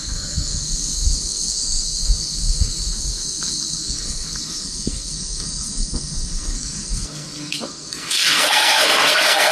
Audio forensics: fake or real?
fake